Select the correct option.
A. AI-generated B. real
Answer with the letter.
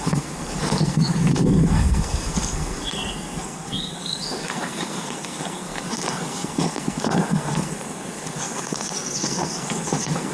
A